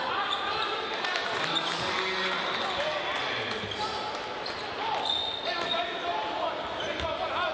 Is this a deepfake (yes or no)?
no